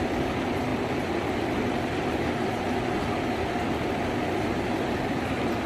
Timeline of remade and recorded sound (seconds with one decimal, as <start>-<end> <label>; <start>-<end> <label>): 0.0-5.7 recorded